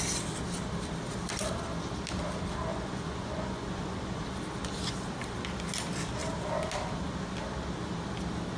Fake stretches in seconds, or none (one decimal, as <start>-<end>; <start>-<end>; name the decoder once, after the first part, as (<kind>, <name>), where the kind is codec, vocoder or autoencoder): 2.7-4.2 (vocoder, Vocos)